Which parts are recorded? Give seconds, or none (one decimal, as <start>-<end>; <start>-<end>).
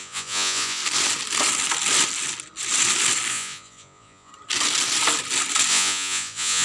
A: 0.8-3.3; 4.3-5.7